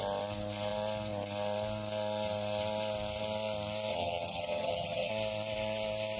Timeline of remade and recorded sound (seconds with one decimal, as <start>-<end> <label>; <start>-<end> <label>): 0.0-3.9 recorded; 3.9-5.1 remade; 5.1-6.2 recorded